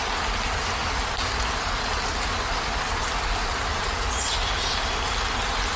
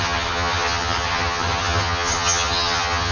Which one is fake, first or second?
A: second